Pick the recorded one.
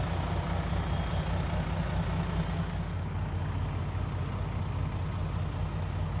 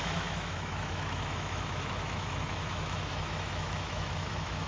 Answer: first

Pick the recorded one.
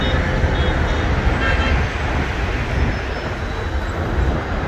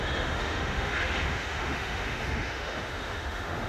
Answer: first